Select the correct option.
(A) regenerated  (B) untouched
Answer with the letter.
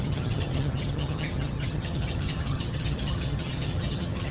A